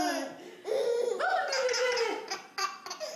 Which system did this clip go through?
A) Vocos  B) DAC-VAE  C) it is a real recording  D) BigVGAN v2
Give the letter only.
C